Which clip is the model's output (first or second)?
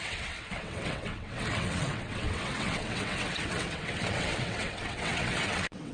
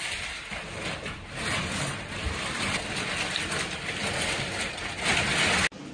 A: first